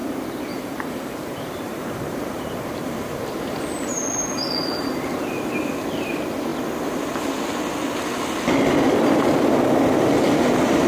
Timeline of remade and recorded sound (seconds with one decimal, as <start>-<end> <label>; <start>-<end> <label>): 0.0-3.6 remade; 3.6-10.9 recorded

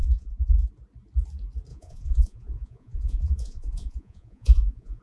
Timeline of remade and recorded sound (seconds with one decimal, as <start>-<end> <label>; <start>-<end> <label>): 0.0-0.7 remade; 0.7-1.7 recorded; 1.7-5.0 remade

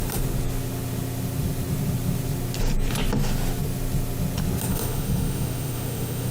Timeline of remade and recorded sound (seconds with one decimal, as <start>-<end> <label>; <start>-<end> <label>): 0.0-4.7 recorded; 4.7-6.3 remade

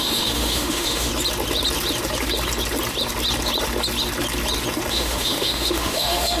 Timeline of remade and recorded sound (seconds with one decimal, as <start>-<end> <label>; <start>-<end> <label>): 0.0-1.1 remade; 1.1-4.9 recorded; 4.9-6.4 remade

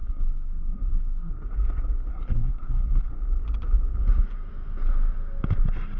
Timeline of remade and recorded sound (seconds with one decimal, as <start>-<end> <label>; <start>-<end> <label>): 0.0-1.3 remade; 1.3-2.1 recorded; 2.1-3.1 remade; 3.1-6.0 recorded

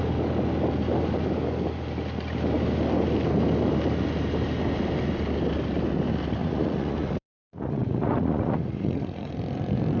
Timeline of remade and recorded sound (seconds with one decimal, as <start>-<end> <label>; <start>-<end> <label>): 0.0-6.4 recorded; 6.4-9.3 remade; 9.3-10.0 recorded